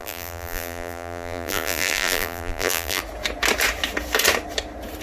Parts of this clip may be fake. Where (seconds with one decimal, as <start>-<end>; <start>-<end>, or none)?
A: 0.0-3.0